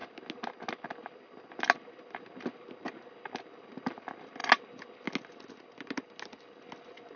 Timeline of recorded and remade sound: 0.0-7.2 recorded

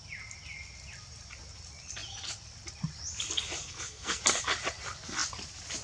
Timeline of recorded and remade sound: 0.0-3.6 recorded; 3.6-4.2 remade; 4.2-5.8 recorded

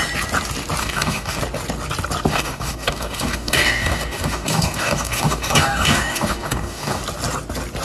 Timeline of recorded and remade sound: 0.0-0.8 recorded; 0.8-1.4 remade; 1.4-2.3 recorded; 2.3-7.0 remade; 7.0-7.8 recorded

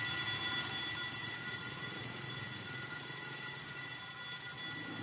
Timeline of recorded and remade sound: 0.0-1.2 recorded; 1.2-4.0 remade; 4.0-5.0 recorded

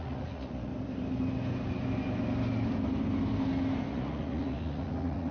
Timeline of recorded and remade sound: 0.0-0.7 remade; 0.7-3.9 recorded; 3.9-5.3 remade

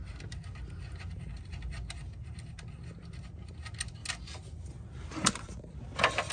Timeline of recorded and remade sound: 0.0-6.3 recorded

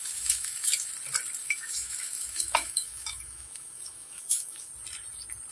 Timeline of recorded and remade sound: 0.0-0.9 remade; 0.9-1.4 recorded; 1.4-4.7 remade; 4.7-5.5 recorded

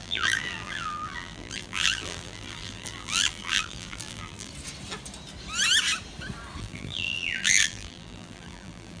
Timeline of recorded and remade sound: 0.0-4.5 remade; 4.5-6.6 recorded; 6.6-9.0 remade